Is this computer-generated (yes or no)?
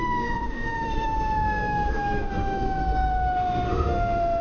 yes